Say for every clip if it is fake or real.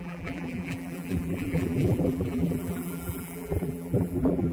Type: fake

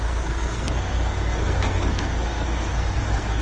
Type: fake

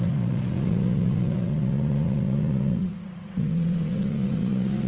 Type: fake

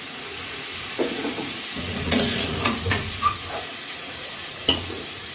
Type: fake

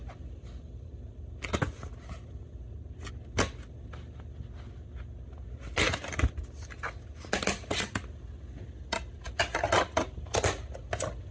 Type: real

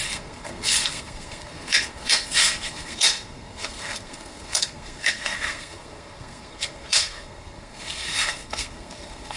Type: fake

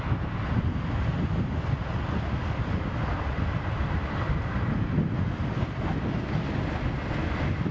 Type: real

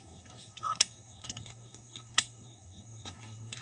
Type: fake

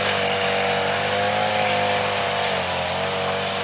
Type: real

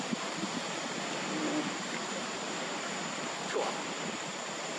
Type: real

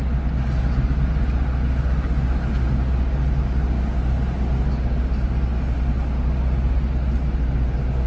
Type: real